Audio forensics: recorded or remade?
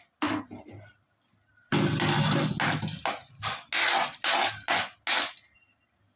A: recorded